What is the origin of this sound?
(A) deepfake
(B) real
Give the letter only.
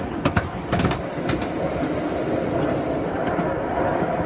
B